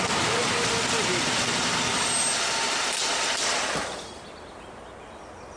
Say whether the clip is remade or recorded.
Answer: recorded